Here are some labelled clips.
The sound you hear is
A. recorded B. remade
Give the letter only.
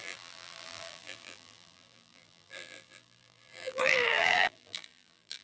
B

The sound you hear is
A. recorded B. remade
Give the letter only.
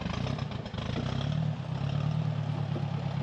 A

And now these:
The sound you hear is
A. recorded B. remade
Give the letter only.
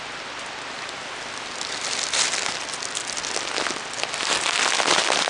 A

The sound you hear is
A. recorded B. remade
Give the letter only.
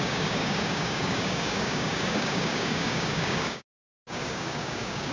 B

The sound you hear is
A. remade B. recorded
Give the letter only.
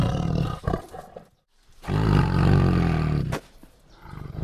B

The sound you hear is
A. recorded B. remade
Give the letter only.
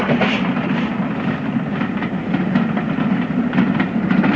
A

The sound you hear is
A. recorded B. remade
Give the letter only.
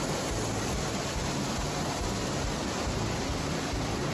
A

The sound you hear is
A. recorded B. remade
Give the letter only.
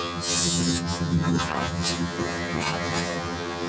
B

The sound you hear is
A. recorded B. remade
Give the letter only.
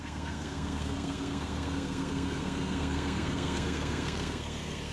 B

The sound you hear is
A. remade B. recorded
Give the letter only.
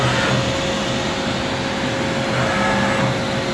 B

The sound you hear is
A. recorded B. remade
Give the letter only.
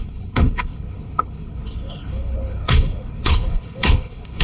B